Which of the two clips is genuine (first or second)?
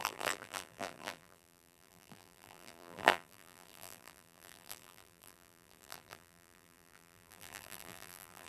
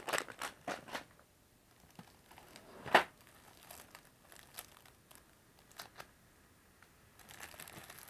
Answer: second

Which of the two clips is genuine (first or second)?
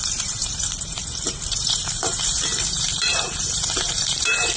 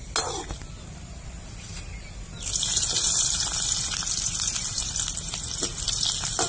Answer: second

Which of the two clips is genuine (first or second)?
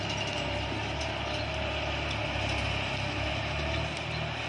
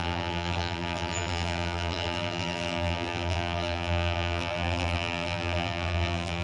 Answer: first